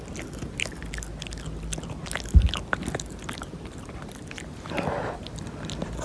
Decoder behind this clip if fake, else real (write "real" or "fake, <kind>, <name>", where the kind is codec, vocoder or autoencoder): real